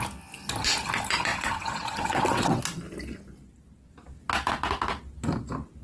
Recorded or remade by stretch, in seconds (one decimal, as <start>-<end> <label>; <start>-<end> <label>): 0.0-1.3 recorded; 1.3-2.6 remade; 2.6-5.8 recorded